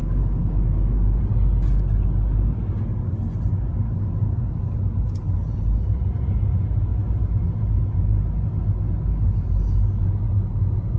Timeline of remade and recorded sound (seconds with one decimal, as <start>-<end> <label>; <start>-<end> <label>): 0.0-1.2 remade; 1.2-11.0 recorded

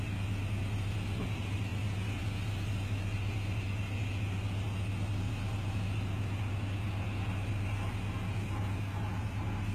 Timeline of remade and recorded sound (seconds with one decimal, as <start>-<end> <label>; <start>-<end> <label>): 0.0-9.7 recorded

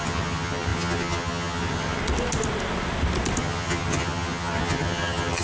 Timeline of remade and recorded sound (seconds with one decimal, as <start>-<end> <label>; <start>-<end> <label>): 0.0-2.0 remade; 2.0-3.4 recorded; 3.4-5.4 remade

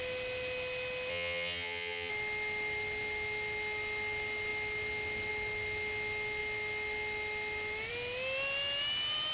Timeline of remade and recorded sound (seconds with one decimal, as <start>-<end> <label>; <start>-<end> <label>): 0.0-1.1 recorded; 1.1-2.1 remade; 2.1-9.3 recorded